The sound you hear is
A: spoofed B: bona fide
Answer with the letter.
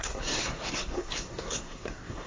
A